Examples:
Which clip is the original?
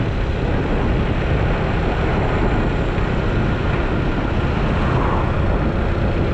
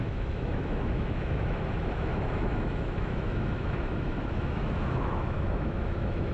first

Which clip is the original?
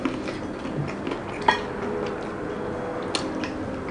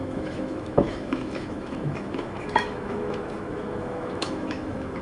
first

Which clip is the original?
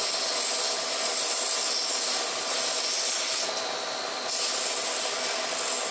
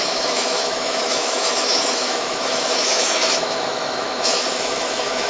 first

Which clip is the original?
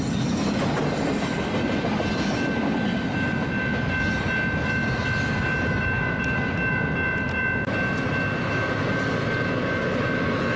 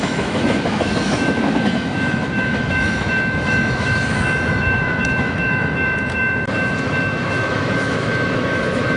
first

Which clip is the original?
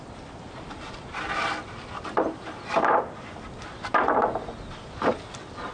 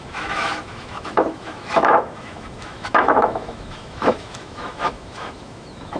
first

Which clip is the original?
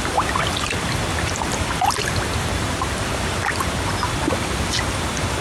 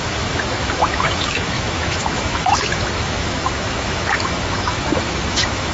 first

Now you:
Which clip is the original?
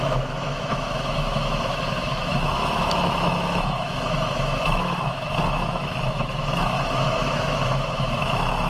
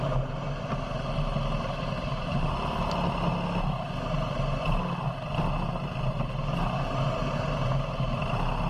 second